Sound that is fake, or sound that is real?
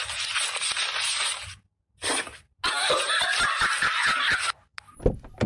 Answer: real